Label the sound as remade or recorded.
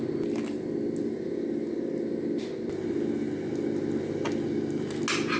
recorded